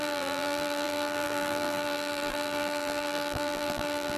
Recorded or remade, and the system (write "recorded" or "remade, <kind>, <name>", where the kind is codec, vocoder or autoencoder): remade, vocoder, BigVGAN v2